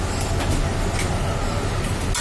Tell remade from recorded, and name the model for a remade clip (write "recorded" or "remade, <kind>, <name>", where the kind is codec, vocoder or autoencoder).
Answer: recorded